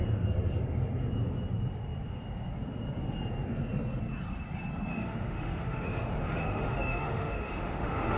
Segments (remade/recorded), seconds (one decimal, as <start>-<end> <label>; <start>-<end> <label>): 0.0-4.9 recorded; 4.9-8.2 remade